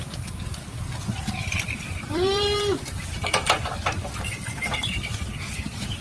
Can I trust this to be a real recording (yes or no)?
no